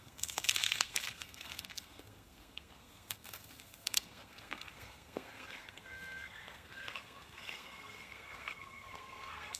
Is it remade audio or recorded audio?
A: remade